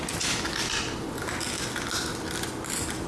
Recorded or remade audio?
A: recorded